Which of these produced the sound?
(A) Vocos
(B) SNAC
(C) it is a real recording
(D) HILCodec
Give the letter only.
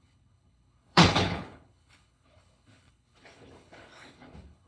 D